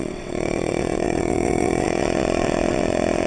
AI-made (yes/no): yes